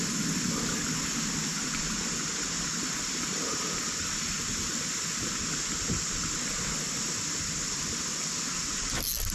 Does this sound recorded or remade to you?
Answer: recorded